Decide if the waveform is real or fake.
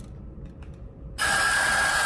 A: real